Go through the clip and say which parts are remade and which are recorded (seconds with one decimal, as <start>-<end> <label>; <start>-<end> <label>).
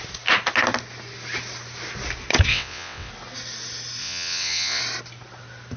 0.0-2.5 recorded; 2.5-3.1 remade; 3.1-4.0 recorded; 4.0-4.8 remade; 4.8-5.8 recorded